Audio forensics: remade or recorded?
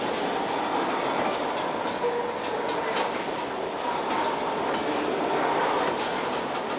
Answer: recorded